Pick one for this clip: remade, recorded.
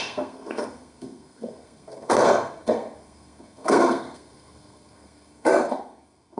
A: remade